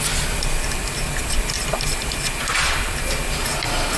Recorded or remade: recorded